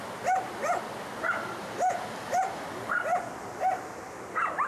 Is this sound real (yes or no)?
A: yes